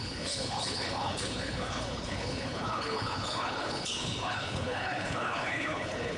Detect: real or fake fake